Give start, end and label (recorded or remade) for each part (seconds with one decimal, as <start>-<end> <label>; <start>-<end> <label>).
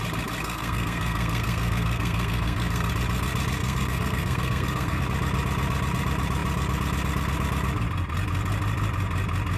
0.0-0.4 recorded; 0.4-2.9 remade; 2.9-3.6 recorded; 3.6-5.0 remade; 5.0-9.6 recorded